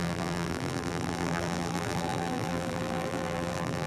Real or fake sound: fake